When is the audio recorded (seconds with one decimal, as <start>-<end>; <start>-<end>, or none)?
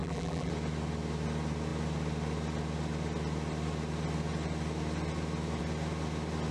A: 0.5-6.5